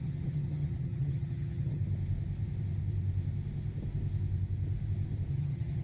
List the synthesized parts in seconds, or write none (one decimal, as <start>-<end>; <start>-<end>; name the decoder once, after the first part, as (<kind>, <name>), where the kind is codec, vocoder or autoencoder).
0.0-1.8 (vocoder, HiFi-GAN); 5.3-5.8